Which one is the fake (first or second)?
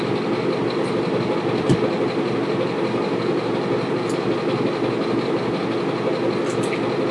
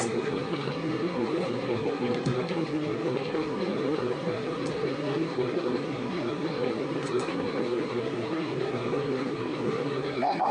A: second